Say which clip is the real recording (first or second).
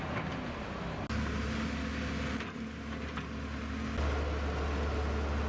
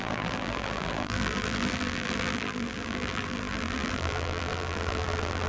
first